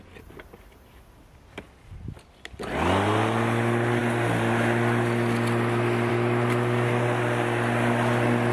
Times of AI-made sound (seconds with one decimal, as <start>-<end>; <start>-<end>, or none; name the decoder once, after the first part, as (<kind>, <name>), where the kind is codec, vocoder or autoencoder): none